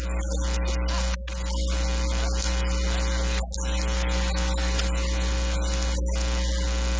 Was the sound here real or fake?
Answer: real